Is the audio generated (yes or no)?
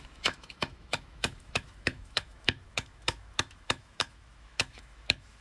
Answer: yes